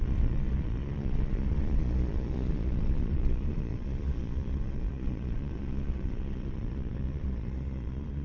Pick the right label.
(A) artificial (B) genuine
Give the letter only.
A